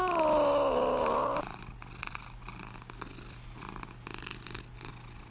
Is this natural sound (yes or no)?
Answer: yes